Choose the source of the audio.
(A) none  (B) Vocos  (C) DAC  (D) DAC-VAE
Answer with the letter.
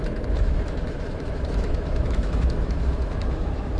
D